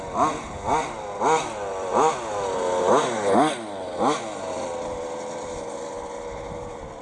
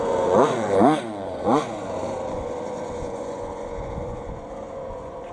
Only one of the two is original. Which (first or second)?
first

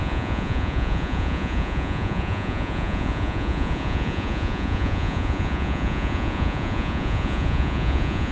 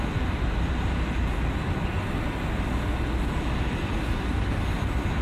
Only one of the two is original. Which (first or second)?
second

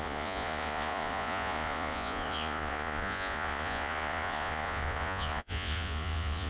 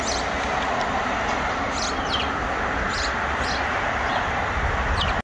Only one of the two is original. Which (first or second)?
second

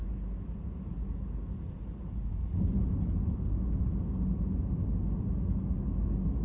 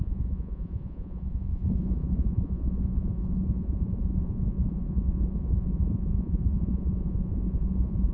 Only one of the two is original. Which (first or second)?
first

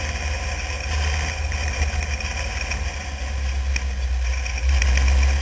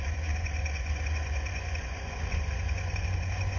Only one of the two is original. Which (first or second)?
first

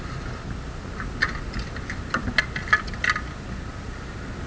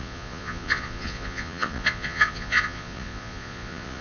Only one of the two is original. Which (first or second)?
first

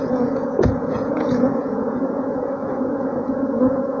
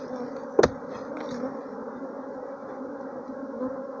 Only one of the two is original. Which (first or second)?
second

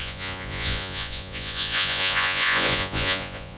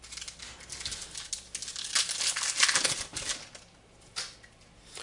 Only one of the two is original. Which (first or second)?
second